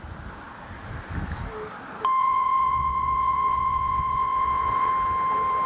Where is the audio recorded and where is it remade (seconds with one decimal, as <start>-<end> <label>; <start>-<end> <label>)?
0.0-2.2 recorded; 2.2-4.9 remade; 4.9-5.7 recorded